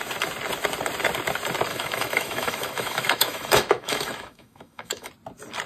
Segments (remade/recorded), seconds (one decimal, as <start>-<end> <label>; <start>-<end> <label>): 0.0-1.7 recorded; 1.7-5.1 remade; 5.1-5.7 recorded